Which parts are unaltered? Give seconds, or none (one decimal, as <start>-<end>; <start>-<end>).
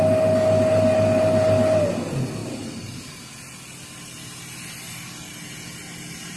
0.0-6.4